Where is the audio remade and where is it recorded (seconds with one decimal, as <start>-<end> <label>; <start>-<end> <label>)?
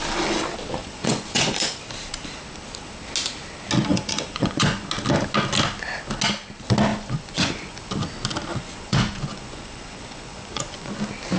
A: 0.0-0.8 recorded; 0.8-1.8 remade; 1.8-3.9 recorded; 3.9-4.9 remade; 4.9-6.9 recorded; 6.9-7.8 remade; 7.8-8.5 recorded; 8.5-10.9 remade; 10.9-11.4 recorded